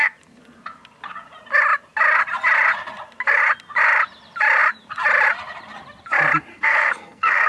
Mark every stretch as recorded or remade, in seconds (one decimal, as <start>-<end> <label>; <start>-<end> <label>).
0.0-6.5 recorded; 6.5-7.5 remade